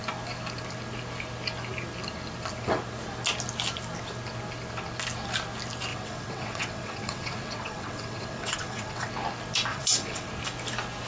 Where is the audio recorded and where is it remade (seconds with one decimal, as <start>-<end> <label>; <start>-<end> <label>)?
0.0-5.9 recorded; 5.9-9.1 remade; 9.1-9.7 recorded; 9.7-10.3 remade; 10.3-11.1 recorded